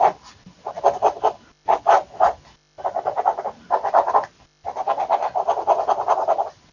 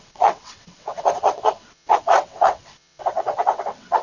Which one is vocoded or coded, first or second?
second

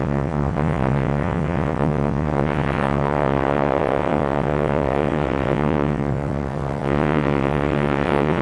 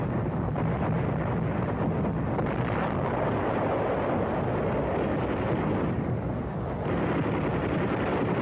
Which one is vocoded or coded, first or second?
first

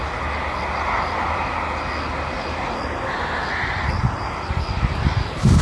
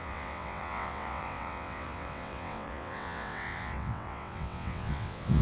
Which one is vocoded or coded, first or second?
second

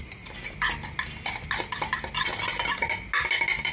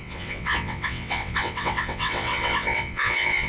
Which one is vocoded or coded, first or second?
second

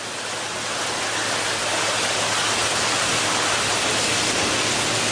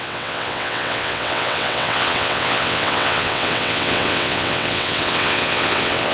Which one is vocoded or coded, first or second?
second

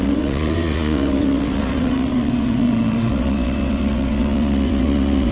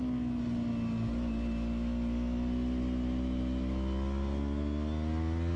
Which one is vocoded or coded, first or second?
first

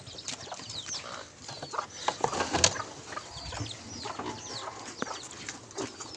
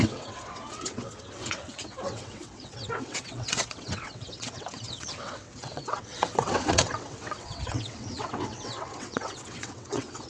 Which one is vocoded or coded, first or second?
second